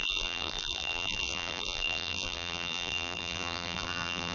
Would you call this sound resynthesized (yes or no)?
yes